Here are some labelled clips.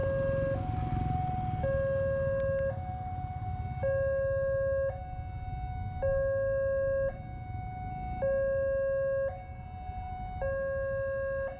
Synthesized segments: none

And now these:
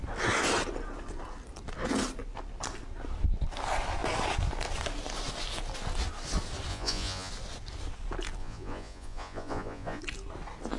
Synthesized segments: 6.7-7.3 (vocoder, Vocos); 8.4-10.0

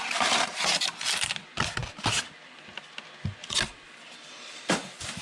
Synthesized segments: none